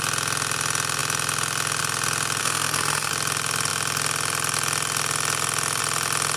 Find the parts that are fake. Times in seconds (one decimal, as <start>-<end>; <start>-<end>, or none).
2.4-3.1